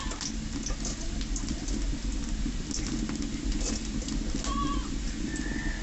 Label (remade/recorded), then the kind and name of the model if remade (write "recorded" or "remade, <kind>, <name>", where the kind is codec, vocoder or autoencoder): recorded